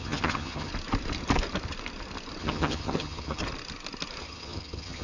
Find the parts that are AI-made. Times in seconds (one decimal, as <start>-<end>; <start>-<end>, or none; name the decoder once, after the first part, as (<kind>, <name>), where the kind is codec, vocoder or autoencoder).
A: 0.0-0.7 (vocoder, HiFi-GAN); 2.4-3.4; 4.2-5.0